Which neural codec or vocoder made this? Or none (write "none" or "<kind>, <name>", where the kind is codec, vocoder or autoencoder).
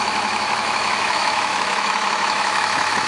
autoencoder, DAC-VAE